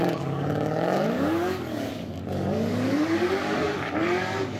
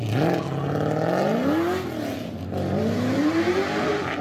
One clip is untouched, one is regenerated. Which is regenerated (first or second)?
first